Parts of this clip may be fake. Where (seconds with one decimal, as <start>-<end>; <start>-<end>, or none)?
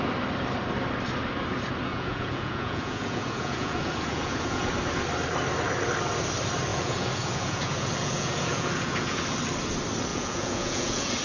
1.9-4.7; 6.7-9.2; 10.1-11.2